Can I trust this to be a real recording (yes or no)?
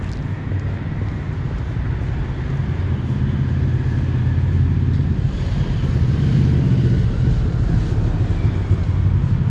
yes